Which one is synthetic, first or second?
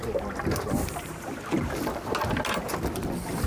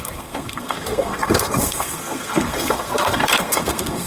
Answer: second